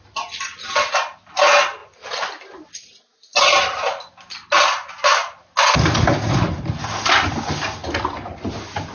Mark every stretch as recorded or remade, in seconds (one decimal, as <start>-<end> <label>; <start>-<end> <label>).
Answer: 0.0-8.9 recorded